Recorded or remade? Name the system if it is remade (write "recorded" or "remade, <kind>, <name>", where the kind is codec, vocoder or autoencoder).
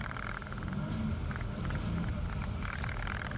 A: recorded